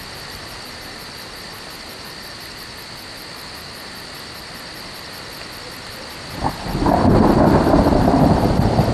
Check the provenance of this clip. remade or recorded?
recorded